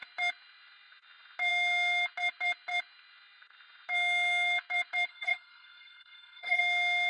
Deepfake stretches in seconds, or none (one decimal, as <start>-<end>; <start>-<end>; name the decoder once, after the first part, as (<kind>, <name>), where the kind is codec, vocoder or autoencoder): 5.1-6.6 (codec, SNAC)